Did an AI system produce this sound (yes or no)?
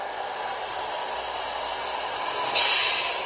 no